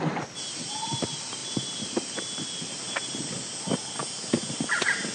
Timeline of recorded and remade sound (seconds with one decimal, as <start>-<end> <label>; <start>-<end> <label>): 0.0-5.1 recorded